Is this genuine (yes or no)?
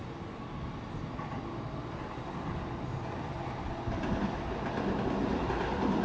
yes